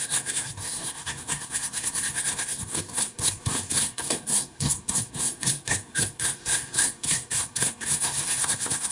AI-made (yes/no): yes